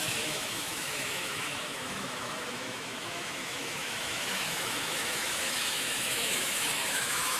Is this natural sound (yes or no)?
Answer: no